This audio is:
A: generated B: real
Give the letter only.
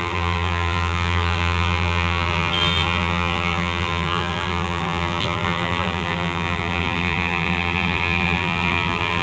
A